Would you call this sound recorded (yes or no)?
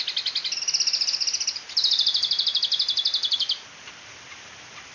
yes